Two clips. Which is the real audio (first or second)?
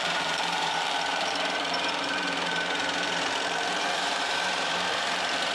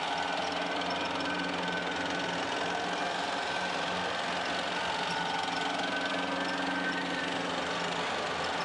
second